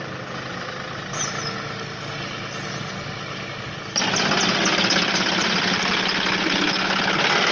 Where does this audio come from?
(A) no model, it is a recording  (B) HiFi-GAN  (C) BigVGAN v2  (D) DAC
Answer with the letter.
A